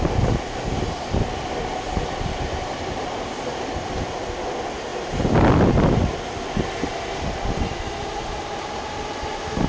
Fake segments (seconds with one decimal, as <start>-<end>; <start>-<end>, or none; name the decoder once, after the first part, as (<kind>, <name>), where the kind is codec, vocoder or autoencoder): none